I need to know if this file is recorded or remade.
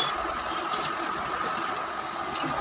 recorded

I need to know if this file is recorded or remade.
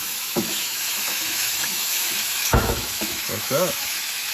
remade